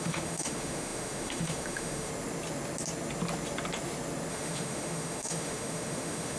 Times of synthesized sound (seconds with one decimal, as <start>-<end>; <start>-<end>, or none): 0.0-2.1; 4.3-6.4